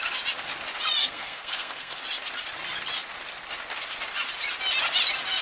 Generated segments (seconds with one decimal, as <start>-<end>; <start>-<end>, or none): 1.0-2.0